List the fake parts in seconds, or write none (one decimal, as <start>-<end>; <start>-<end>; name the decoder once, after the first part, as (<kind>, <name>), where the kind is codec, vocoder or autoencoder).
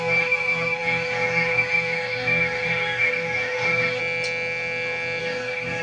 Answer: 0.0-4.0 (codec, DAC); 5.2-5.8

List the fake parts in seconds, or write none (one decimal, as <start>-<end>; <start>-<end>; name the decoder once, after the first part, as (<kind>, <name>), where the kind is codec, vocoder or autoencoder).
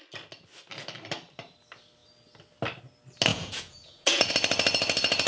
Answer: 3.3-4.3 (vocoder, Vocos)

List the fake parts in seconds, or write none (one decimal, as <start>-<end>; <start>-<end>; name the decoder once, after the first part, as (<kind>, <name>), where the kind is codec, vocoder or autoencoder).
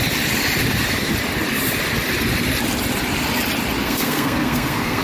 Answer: 3.8-5.0 (codec, SNAC)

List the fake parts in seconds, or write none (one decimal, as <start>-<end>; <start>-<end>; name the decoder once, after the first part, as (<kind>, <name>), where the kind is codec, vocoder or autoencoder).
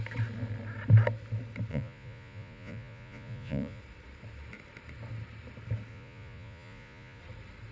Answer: 1.7-3.8 (vocoder, Vocos); 5.9-7.2